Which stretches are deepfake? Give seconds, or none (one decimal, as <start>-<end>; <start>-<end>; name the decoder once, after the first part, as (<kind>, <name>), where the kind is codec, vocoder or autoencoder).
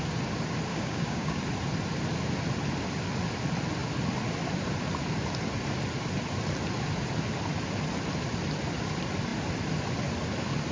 0.7-1.4 (codec, DAC)